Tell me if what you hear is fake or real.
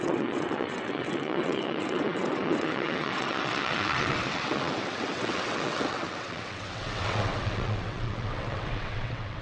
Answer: fake